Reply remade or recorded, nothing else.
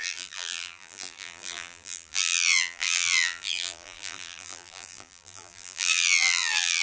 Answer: remade